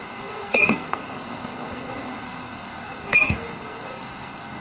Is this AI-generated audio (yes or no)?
yes